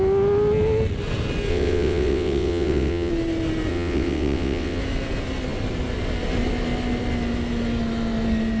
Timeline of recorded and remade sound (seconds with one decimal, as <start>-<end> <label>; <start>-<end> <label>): 0.0-1.5 recorded; 1.5-3.1 remade; 3.1-3.7 recorded; 3.7-4.8 remade; 4.8-8.6 recorded